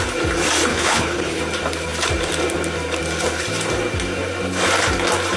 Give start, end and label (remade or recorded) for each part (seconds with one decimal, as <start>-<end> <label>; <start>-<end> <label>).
0.0-0.7 recorded; 0.7-1.4 remade; 1.4-5.4 recorded